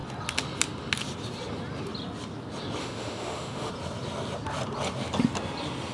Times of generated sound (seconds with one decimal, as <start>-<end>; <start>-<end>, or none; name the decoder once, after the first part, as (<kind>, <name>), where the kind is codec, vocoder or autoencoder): 2.8-3.7 (autoencoder, DAC-VAE)